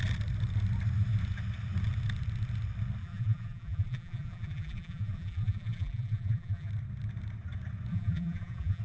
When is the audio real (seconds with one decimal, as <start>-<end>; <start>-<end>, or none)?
0.0-3.0; 6.7-7.9